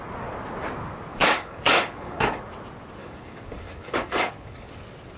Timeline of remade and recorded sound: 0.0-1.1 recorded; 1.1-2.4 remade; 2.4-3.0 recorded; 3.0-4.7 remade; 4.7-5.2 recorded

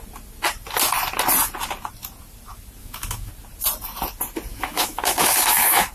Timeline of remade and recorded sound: 0.0-2.8 recorded; 2.8-3.3 remade; 3.3-4.5 recorded; 4.5-5.9 remade

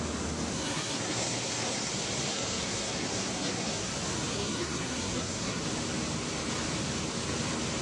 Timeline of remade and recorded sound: 0.0-0.5 recorded; 0.5-1.9 remade; 1.9-2.3 recorded; 2.3-3.9 remade; 3.9-4.3 recorded; 4.3-5.6 remade; 5.6-7.8 recorded